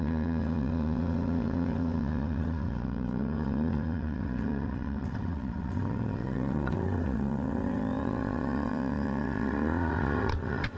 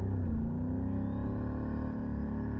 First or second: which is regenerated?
first